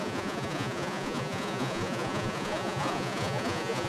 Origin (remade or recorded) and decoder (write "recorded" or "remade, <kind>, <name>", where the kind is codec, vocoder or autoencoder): remade, vocoder, Vocos